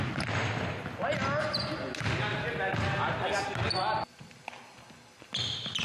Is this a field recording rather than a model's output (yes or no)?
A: yes